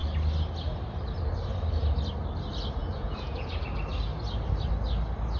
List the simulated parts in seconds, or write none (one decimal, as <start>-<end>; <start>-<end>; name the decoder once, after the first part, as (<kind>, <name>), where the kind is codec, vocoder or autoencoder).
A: 2.8-3.6 (vocoder, Vocos)